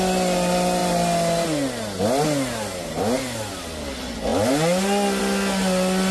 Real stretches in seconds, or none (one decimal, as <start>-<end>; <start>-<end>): 0.0-6.1